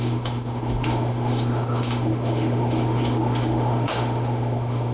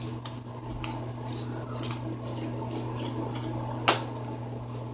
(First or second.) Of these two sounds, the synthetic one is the first